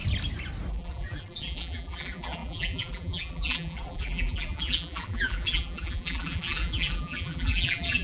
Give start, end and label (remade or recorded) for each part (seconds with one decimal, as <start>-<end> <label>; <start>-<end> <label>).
0.0-0.7 recorded; 0.7-8.0 remade